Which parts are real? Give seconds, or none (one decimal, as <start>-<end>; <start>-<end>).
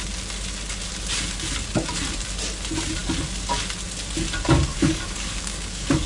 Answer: 0.0-4.7